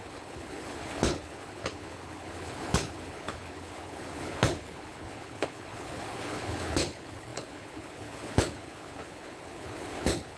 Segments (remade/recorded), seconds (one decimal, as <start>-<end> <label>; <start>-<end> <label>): 0.0-10.4 remade